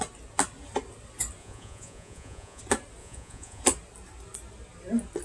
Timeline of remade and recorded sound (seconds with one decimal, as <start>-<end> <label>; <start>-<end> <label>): 0.0-1.4 recorded; 1.4-2.6 remade; 2.6-3.0 recorded; 3.0-3.6 remade; 3.6-5.2 recorded

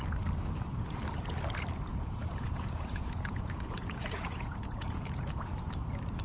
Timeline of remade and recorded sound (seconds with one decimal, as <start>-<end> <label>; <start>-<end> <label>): 0.0-1.9 recorded; 1.9-5.6 remade; 5.6-6.2 recorded

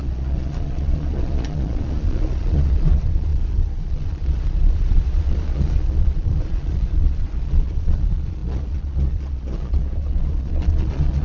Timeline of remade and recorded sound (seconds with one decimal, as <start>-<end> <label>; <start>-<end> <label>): 0.0-11.2 remade

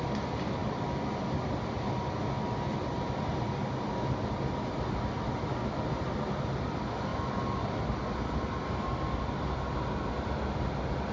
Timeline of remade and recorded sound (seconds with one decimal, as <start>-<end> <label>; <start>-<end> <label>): 0.0-11.1 recorded

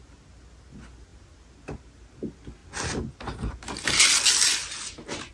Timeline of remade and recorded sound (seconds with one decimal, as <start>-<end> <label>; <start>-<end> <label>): 0.0-5.3 recorded

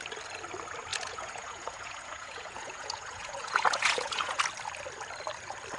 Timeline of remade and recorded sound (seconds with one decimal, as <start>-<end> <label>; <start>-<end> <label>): 0.0-0.9 recorded; 0.9-4.4 remade; 4.4-5.8 recorded